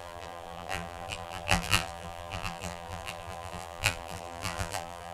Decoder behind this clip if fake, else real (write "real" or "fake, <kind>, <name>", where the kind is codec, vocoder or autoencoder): fake, vocoder, BigVGAN v2